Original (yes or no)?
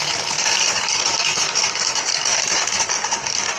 no